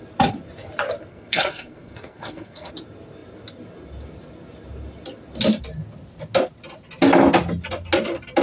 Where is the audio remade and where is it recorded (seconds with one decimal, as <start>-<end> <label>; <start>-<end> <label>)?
0.0-1.1 recorded; 1.1-2.7 remade; 2.7-8.4 recorded